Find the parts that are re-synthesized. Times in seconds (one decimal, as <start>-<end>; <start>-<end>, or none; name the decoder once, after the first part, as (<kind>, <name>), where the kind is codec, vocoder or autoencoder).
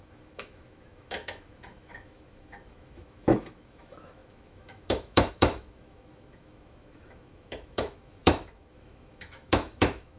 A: 0.0-10.2 (autoencoder, DAC-VAE)